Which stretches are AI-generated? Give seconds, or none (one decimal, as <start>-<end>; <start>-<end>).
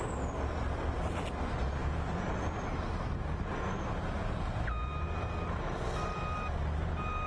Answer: 1.8-2.6